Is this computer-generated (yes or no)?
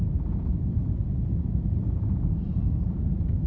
no